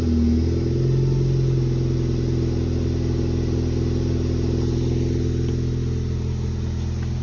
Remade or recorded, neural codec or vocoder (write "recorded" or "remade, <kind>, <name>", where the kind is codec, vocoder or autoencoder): recorded